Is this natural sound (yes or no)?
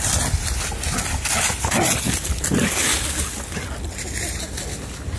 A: yes